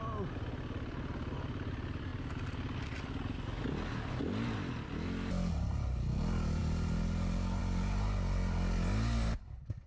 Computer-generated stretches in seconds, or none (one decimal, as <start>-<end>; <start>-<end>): none